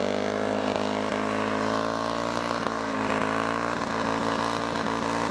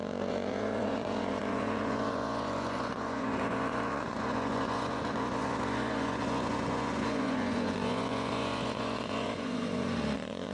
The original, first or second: first